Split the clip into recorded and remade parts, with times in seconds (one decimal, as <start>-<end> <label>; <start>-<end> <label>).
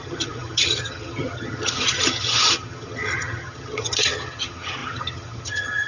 0.0-5.9 remade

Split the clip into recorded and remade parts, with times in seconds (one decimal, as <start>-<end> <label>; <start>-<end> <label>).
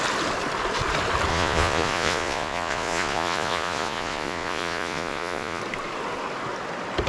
0.0-1.3 recorded; 1.3-5.6 remade; 5.6-7.1 recorded